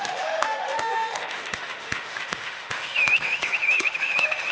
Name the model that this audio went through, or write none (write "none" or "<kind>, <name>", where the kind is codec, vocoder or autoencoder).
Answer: autoencoder, DAC-VAE